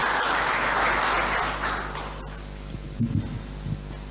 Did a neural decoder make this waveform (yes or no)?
no